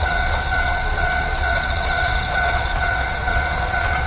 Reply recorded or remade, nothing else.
remade